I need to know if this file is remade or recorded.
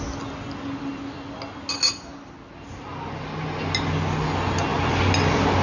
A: recorded